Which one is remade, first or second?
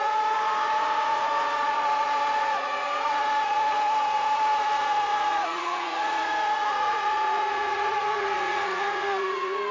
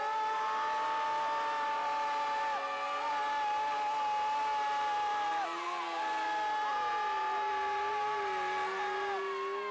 first